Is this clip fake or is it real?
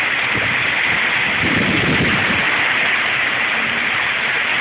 real